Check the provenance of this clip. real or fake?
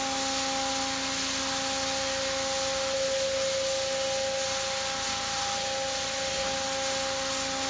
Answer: real